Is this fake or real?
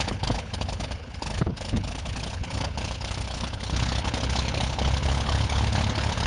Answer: fake